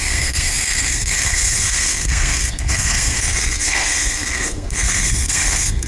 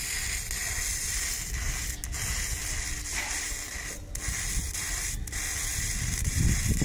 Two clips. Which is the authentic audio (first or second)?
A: second